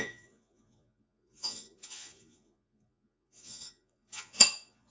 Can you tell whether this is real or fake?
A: fake